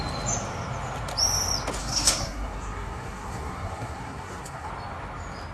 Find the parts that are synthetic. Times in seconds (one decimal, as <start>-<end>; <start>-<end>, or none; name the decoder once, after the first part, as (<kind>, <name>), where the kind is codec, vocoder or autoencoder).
1.8-4.7 (codec, SNAC)